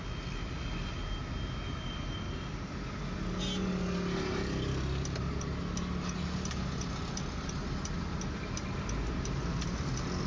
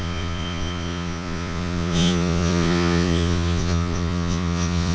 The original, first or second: first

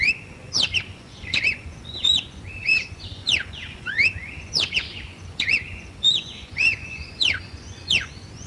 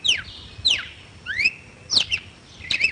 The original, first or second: second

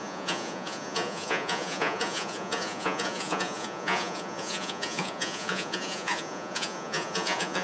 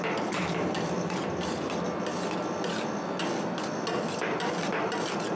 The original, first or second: second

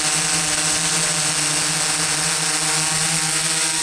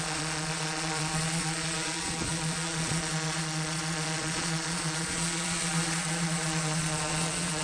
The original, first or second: first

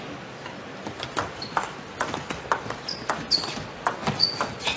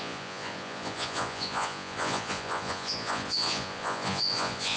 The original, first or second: first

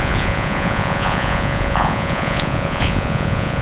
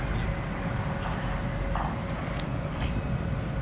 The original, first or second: second